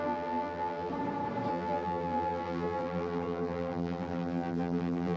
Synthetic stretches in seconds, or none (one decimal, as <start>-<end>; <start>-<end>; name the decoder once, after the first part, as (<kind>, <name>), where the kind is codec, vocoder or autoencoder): 0.0-0.9 (vocoder, BigVGAN v2); 1.5-5.2